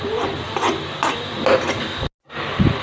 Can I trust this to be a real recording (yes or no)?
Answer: yes